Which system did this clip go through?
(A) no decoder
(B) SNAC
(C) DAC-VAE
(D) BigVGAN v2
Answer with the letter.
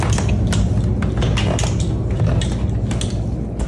A